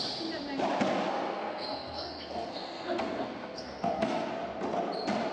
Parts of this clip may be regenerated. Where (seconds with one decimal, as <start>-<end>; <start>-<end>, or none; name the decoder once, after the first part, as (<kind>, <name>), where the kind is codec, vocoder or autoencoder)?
1.1-4.3 (codec, SNAC)